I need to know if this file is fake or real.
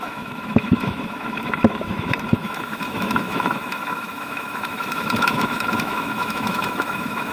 fake